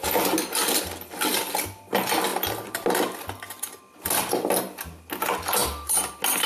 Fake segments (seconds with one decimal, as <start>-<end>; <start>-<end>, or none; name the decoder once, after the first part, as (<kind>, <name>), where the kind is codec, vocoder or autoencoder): 1.3-1.9 (vocoder, BigVGAN v2); 2.3-3.8; 5.6-6.1